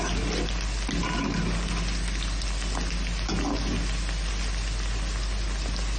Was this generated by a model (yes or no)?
no